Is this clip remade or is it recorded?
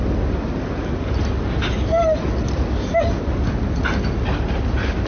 recorded